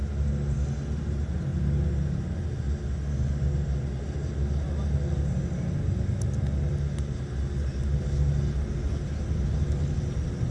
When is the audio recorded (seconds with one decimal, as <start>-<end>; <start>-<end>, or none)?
0.0-10.5